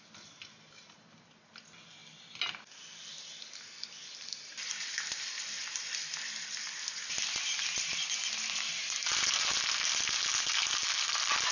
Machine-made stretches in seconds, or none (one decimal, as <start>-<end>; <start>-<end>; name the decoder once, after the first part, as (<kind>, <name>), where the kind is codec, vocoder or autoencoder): none